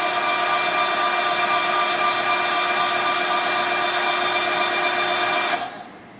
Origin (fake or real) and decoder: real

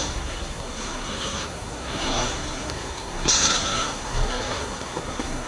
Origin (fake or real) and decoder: fake, codec, SNAC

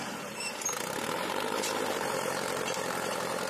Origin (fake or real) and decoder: fake, vocoder, BigVGAN v2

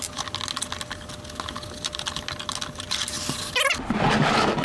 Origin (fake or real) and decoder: real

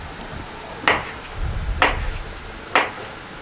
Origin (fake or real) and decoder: real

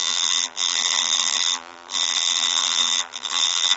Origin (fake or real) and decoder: fake, vocoder, BigVGAN v2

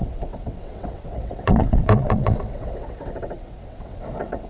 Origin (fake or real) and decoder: fake, vocoder, WaveNeXt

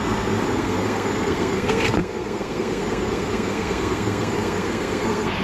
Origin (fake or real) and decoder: fake, codec, SNAC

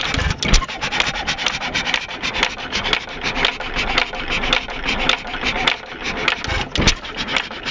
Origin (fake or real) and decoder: real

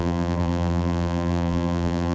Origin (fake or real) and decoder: fake, vocoder, BigVGAN v2